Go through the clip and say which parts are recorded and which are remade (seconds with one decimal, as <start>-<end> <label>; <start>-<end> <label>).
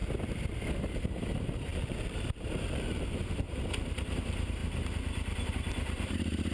0.0-0.8 recorded; 0.8-4.6 remade; 4.6-5.5 recorded; 5.5-6.5 remade